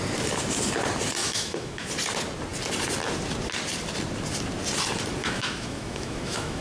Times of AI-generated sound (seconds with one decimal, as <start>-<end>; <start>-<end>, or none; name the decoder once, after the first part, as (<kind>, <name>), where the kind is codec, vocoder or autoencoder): 1.2-1.9 (autoencoder, DAC-VAE); 5.2-6.6